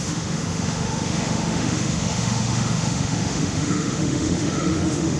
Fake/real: fake